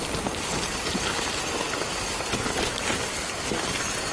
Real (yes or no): yes